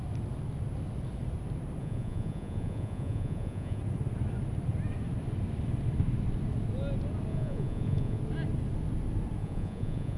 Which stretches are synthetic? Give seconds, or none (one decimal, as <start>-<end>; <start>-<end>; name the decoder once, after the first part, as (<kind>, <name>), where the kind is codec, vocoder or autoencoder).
1.8-3.8 (vocoder, Vocos); 7.3-8.2; 9.4-10.2